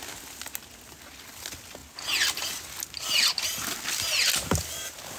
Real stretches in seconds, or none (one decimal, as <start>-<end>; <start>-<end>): 0.0-5.2